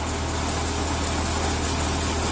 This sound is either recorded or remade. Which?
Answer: recorded